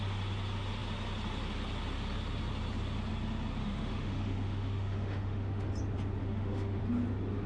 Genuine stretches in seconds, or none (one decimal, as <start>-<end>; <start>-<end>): 0.0-3.6; 5.7-6.2; 6.8-7.5